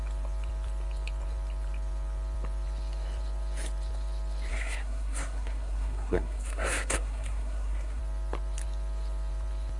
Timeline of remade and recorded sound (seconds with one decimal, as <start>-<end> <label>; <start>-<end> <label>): 0.0-4.5 recorded; 4.5-8.0 remade; 8.0-9.8 recorded